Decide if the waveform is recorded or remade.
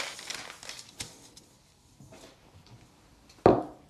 recorded